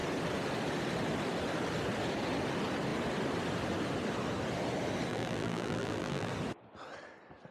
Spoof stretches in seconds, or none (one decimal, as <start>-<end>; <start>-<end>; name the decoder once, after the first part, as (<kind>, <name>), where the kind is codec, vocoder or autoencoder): 5.1-6.3 (vocoder, BigVGAN v2)